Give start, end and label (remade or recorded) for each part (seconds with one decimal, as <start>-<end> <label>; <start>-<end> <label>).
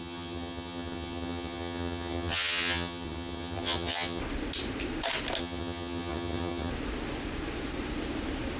0.0-4.2 remade; 4.2-5.4 recorded; 5.4-6.7 remade; 6.7-8.6 recorded